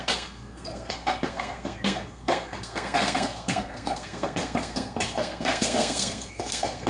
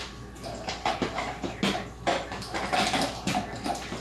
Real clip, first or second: second